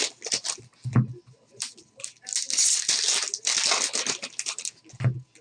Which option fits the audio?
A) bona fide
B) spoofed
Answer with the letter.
A